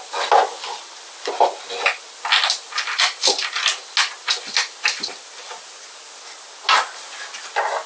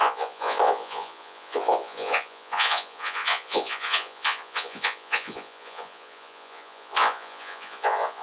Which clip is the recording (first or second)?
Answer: first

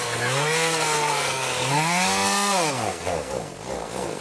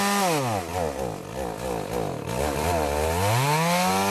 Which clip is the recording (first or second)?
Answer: second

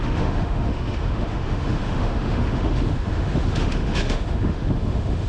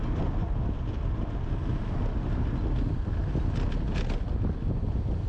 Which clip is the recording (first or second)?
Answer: second